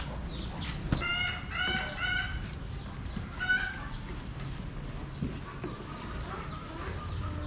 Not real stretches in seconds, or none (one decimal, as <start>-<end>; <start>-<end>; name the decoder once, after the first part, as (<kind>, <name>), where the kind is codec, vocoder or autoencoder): none